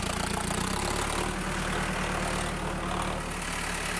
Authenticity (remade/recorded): recorded